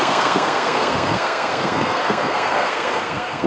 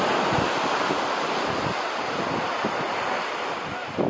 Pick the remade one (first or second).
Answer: first